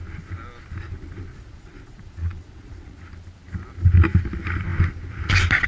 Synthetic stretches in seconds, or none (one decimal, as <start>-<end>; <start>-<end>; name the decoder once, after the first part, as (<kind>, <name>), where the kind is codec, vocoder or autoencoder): 1.3-3.0 (vocoder, Vocos)